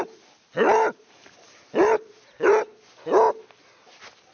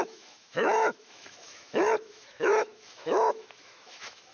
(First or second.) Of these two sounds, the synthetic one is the second